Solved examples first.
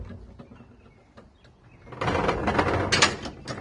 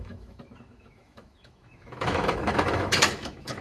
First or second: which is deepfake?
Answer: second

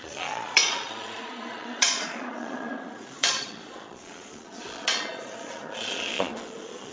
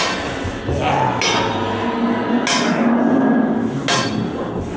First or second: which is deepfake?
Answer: first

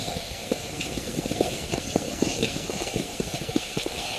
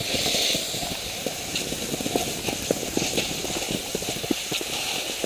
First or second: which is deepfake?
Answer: first